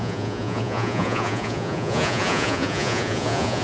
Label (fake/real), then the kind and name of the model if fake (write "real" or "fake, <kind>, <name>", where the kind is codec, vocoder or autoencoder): fake, vocoder, Vocos